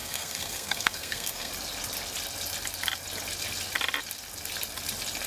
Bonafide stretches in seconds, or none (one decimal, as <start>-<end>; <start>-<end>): 1.5-5.3